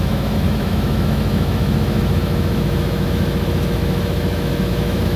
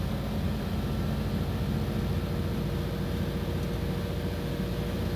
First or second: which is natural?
second